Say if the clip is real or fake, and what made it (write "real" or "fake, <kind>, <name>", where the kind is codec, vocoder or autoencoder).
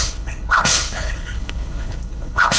fake, codec, HILCodec